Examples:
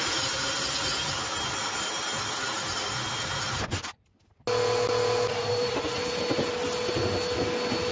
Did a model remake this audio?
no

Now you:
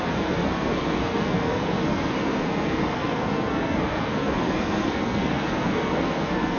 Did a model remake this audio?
yes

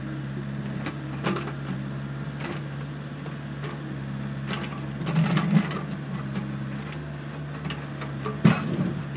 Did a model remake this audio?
no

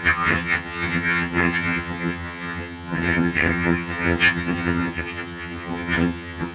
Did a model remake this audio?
yes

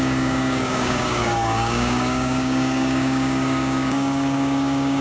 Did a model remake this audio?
yes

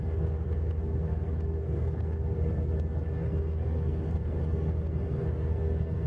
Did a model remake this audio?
yes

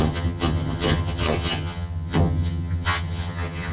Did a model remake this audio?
yes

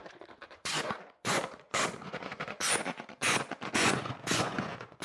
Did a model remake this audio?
yes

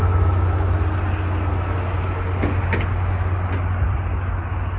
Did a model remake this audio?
no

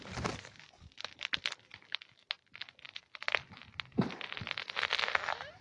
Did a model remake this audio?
no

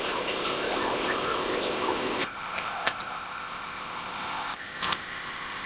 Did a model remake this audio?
yes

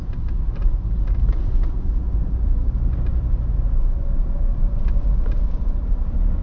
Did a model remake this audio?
yes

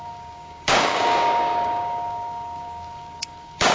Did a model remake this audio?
yes